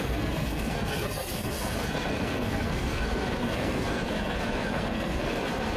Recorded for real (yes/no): no